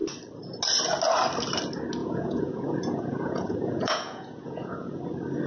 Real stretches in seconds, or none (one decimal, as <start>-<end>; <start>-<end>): 0.0-2.0; 5.0-5.5